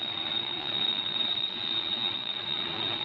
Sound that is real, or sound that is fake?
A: fake